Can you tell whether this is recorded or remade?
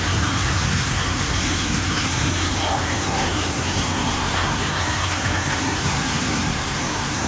remade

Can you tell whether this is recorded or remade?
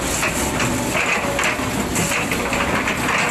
recorded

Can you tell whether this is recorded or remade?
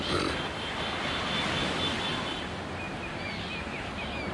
recorded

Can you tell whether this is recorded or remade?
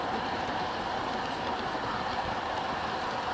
recorded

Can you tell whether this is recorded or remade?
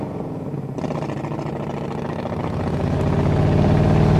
recorded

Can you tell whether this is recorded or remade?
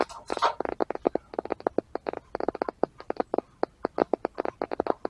recorded